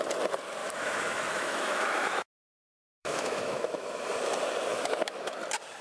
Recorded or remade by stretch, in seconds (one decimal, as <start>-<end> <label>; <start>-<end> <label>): 0.0-0.6 recorded; 0.6-4.1 remade; 4.1-4.7 recorded; 4.7-5.3 remade; 5.3-5.8 recorded